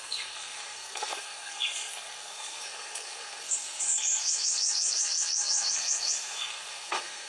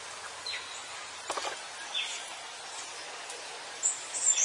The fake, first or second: first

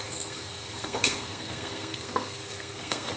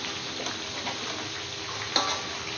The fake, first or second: first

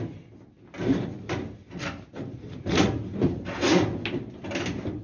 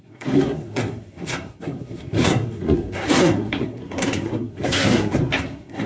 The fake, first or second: second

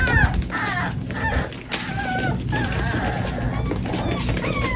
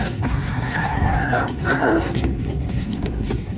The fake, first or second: second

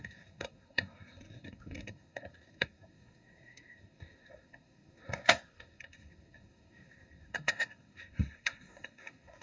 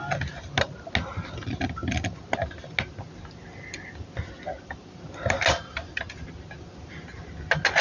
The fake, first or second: first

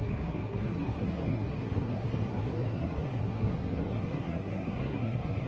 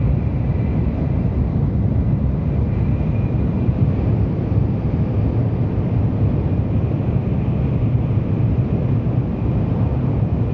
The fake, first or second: first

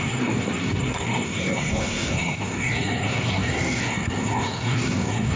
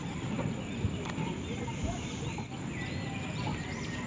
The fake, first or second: first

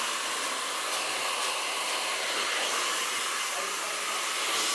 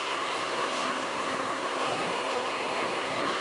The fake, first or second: second